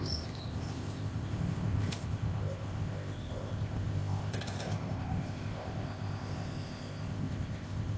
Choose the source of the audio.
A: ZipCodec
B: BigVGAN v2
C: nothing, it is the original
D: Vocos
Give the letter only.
A